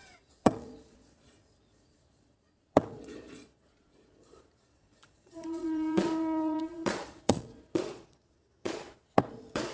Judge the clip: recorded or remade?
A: remade